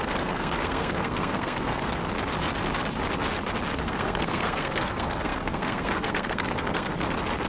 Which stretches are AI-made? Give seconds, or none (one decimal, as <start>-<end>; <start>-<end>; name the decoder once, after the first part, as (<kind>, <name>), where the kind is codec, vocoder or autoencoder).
0.0-2.0 (codec, SNAC); 3.8-6.9